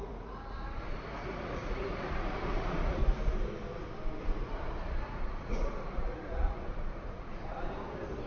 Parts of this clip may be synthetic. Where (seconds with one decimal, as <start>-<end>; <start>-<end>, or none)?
0.0-3.0; 4.2-7.6